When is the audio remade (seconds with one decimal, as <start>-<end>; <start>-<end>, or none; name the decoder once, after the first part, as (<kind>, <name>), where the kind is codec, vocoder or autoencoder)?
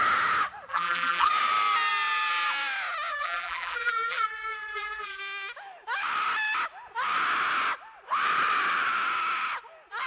0.7-1.3 (vocoder, BigVGAN v2); 3.1-5.2